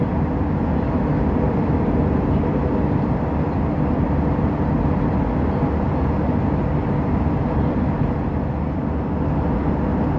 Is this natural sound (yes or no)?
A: yes